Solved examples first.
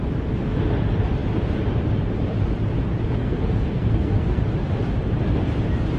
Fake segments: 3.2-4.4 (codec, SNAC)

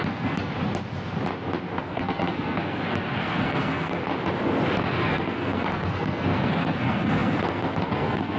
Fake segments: 0.0-0.5 (codec, SNAC); 1.8-4.0; 4.8-8.4

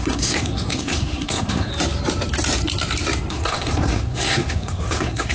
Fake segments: 0.0-1.7 (codec, SNAC); 3.3-5.3

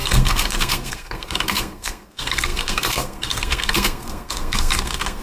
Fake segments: 0.0-5.2 (codec, SNAC)

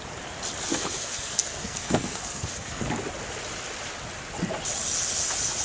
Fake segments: 0.7-2.8 (codec, SNAC)

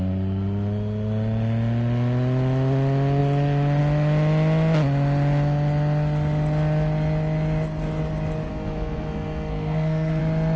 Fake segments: 8.5-10.2 (codec, SNAC)

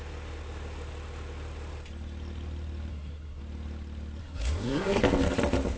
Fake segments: 2.9-3.4 (codec, SNAC); 4.2-5.0